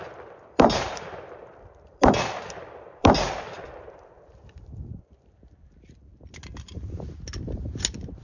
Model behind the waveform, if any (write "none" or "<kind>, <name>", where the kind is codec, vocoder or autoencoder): vocoder, BigVGAN v2